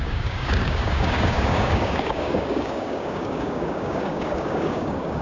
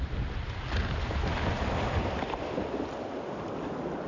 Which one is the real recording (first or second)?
second